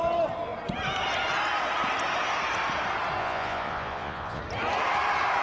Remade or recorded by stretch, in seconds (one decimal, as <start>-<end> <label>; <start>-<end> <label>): 0.0-3.2 recorded; 3.2-4.4 remade; 4.4-5.4 recorded